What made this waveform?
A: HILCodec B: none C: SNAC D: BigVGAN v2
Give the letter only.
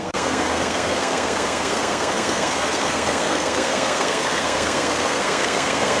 C